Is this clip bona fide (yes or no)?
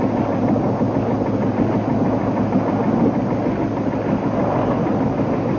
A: yes